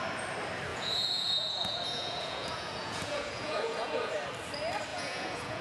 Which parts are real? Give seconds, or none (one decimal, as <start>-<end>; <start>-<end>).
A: 0.0-0.7; 4.1-4.9